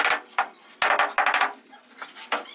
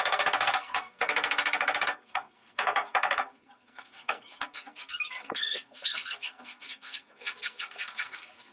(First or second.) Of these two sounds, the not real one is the second